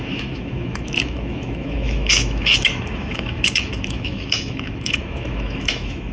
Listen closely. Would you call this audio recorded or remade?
remade